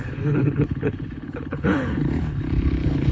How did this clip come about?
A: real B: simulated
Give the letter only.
B